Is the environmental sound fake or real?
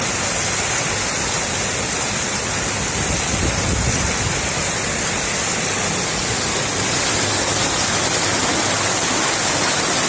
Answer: real